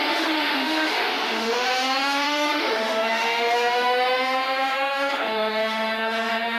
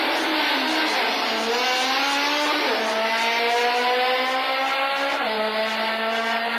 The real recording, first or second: second